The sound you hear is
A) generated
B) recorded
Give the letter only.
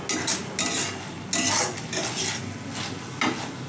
B